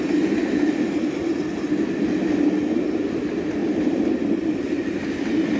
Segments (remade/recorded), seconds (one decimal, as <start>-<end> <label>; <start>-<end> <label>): 0.0-5.6 recorded